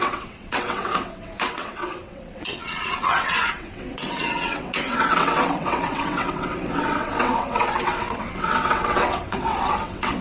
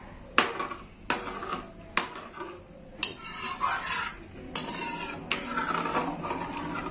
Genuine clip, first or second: second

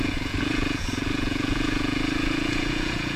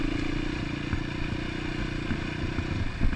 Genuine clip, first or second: second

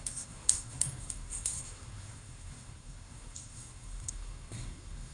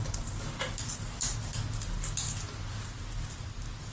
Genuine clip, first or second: second